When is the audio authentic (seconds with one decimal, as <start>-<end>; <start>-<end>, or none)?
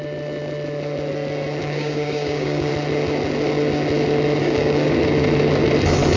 0.0-1.6; 2.7-4.4; 4.9-6.2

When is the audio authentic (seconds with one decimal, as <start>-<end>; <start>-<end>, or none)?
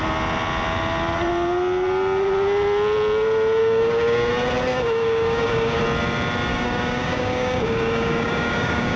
0.0-3.6; 4.3-4.7; 5.8-6.5